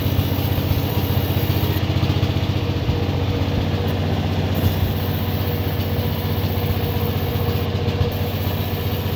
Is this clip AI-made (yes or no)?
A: no